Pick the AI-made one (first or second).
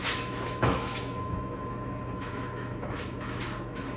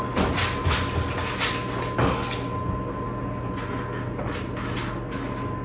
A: first